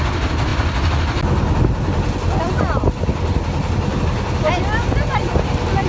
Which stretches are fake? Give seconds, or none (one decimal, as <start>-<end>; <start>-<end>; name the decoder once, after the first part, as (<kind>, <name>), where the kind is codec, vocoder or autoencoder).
none